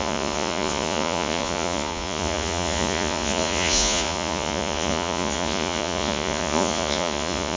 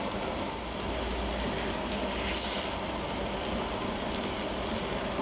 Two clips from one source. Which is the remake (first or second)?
first